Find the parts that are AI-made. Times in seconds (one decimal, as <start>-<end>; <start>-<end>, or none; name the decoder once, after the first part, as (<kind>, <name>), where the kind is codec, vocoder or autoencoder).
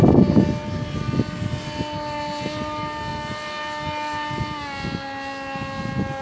none